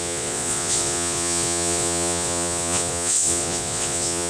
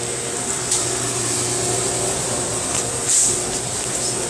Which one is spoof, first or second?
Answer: first